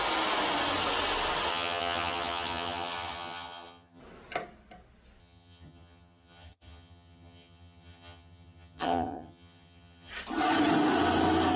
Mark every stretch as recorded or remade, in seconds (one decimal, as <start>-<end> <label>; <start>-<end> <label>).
0.0-1.5 recorded; 1.5-4.0 remade; 4.0-5.2 recorded; 5.2-10.1 remade; 10.1-11.6 recorded

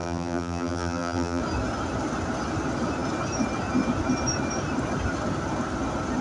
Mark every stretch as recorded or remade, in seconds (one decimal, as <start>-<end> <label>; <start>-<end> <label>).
0.0-1.4 remade; 1.4-6.2 recorded

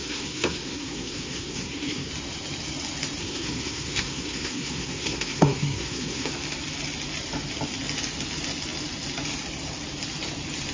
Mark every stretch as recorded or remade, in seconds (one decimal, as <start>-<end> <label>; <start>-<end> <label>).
0.0-2.1 remade; 2.1-3.2 recorded; 3.2-6.3 remade; 6.3-10.7 recorded

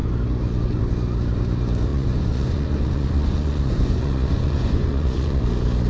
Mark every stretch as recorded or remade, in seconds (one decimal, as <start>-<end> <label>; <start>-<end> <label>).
0.0-1.9 recorded; 1.9-5.4 remade; 5.4-5.9 recorded

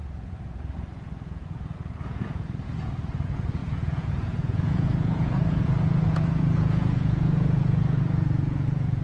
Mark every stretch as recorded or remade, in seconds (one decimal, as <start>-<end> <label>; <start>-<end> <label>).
0.0-9.0 remade

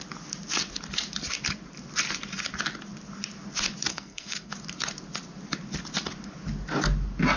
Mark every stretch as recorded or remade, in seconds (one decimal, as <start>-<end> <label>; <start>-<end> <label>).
0.0-3.9 recorded; 3.9-4.5 remade; 4.5-7.4 recorded

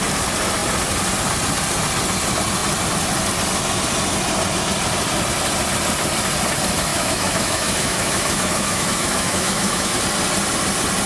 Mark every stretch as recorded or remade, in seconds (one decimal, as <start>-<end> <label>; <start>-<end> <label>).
0.0-6.9 recorded; 6.9-10.0 remade; 10.0-11.1 recorded